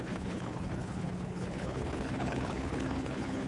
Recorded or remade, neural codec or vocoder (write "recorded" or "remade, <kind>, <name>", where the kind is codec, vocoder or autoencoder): remade, codec, HILCodec